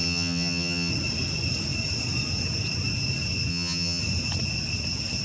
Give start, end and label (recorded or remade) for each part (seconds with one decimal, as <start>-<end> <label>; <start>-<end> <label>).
0.0-0.9 remade; 0.9-3.5 recorded; 3.5-4.0 remade; 4.0-5.2 recorded